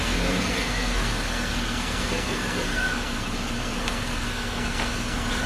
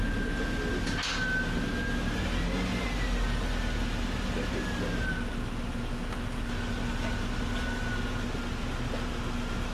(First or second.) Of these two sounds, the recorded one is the second